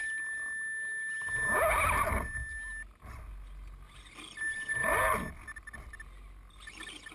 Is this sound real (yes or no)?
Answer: yes